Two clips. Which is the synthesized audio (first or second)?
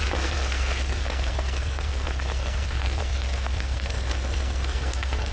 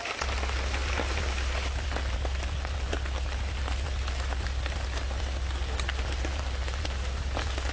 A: first